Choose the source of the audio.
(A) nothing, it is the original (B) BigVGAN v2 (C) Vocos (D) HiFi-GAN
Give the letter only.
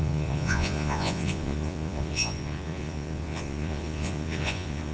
C